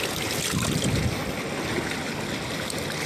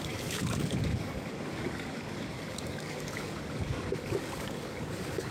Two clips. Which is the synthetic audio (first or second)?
second